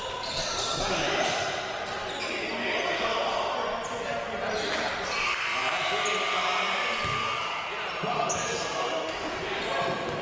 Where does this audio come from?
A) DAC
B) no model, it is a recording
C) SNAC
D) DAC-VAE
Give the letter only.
B